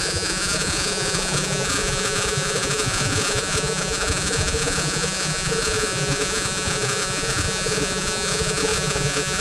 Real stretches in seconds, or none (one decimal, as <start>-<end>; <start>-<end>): none